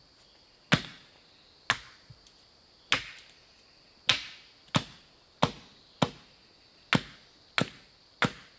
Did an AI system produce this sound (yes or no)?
no